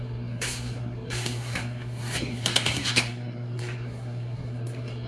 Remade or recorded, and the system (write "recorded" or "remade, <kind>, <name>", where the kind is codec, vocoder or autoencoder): remade, codec, SNAC